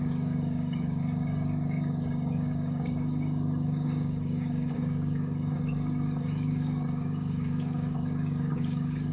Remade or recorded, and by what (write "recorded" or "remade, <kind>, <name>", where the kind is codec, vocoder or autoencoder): remade, codec, DAC